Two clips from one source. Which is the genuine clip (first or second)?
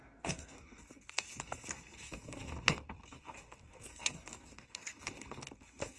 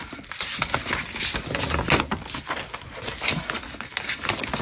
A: second